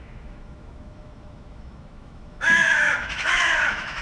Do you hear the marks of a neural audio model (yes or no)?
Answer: yes